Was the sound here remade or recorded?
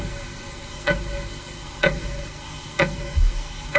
remade